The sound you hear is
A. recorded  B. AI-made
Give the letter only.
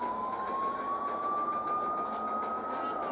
A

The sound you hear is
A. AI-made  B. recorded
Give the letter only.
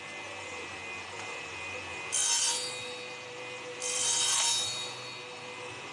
B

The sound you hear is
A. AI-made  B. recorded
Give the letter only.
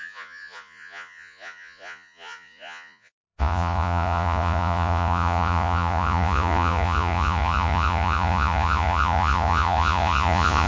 A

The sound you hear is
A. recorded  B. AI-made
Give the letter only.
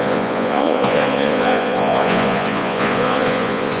B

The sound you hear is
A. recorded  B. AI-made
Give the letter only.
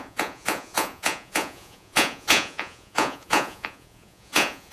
B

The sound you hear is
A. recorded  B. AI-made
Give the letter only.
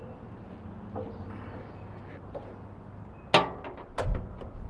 A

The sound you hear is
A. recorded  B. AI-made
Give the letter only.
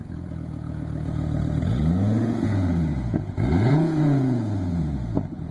B